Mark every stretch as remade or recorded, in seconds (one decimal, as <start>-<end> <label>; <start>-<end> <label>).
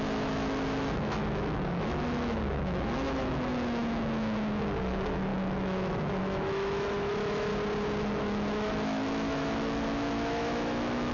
0.0-7.5 remade; 7.5-8.0 recorded; 8.0-11.1 remade